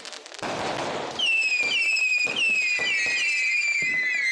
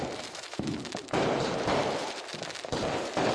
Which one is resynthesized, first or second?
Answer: second